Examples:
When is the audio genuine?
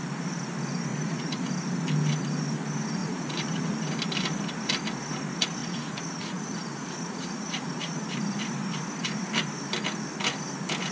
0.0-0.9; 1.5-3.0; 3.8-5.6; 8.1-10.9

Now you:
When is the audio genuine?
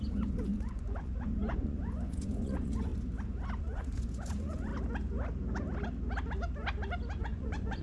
2.9-3.6; 4.7-7.2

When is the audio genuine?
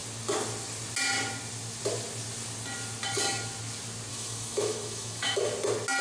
0.0-4.1; 5.4-6.0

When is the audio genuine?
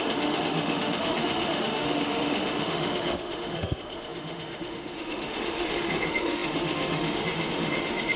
none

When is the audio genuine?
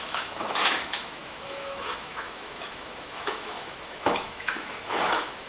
none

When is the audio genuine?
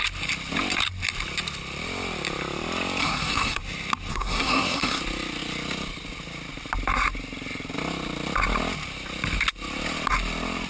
0.0-3.0; 3.6-4.1; 5.0-10.7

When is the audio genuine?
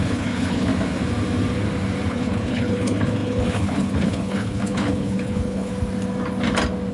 0.7-2.1; 5.7-6.9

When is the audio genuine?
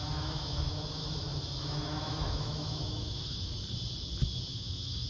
1.0-1.6; 3.5-4.5